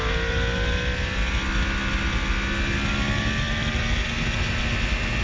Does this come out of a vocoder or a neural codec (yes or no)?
no